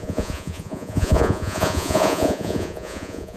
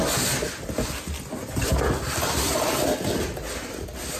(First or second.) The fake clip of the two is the first